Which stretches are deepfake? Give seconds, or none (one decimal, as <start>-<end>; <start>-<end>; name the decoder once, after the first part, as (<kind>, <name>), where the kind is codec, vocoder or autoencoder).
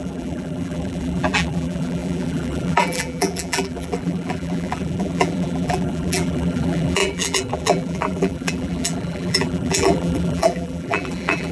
0.0-11.5 (vocoder, BigVGAN v2)